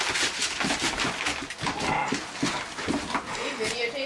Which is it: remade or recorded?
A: recorded